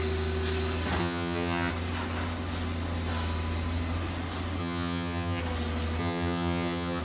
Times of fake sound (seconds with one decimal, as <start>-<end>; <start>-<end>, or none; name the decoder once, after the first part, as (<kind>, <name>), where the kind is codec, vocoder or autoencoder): 1.0-1.7 (vocoder, HiFi-GAN); 4.6-5.4; 6.0-7.0

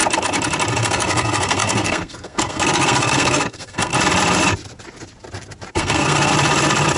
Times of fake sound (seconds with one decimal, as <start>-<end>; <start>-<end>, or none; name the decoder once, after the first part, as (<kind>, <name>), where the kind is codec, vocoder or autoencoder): 0.8-3.9 (codec, SNAC); 5.7-6.3

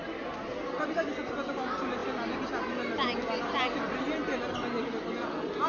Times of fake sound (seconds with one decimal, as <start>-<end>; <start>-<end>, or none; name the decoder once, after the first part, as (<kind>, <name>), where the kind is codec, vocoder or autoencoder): none

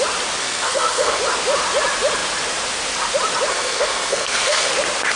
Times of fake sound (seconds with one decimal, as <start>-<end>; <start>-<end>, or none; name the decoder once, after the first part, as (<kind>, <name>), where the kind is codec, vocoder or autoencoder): 0.4-1.2 (codec, SNAC); 3.5-4.7